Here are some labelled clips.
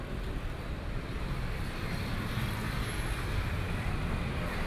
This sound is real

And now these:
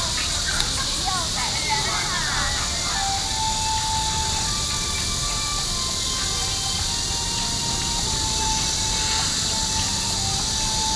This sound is real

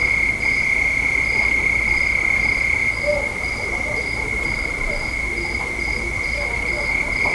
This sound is real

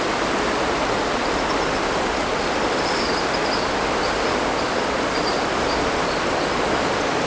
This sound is real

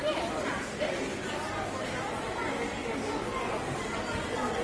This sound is real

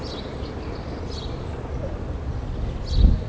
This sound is real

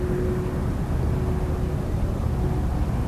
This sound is real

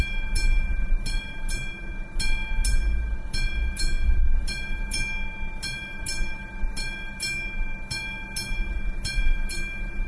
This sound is real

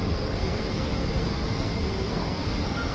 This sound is fake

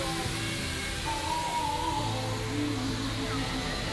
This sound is real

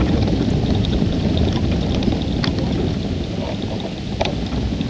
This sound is real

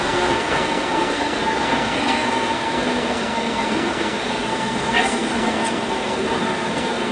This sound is fake